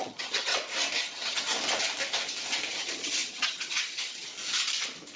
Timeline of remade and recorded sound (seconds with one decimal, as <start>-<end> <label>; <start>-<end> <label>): 0.0-0.5 remade; 0.5-1.0 recorded; 1.0-1.5 remade; 1.5-2.7 recorded; 2.7-4.3 remade; 4.3-5.2 recorded